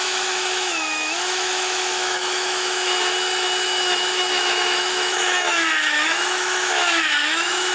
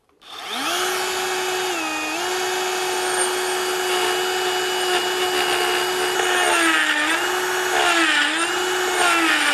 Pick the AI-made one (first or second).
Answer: first